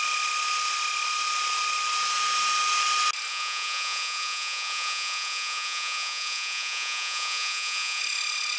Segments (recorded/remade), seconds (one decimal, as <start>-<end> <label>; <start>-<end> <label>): 0.0-3.3 recorded; 3.3-8.0 remade; 8.0-8.6 recorded